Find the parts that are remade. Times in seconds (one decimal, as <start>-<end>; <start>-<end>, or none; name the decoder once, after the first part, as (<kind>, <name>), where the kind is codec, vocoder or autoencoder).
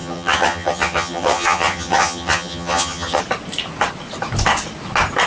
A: 0.0-3.2 (vocoder, HiFi-GAN)